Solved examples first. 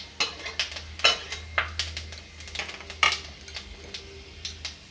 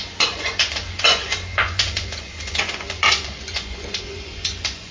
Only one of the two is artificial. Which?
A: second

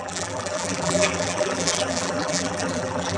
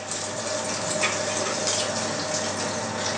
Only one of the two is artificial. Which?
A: first